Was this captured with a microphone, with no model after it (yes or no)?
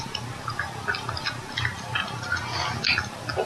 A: yes